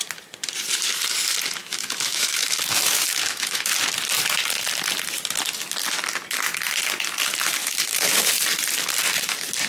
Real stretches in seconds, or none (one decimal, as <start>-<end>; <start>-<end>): 0.0-1.6; 3.7-7.6; 8.3-9.7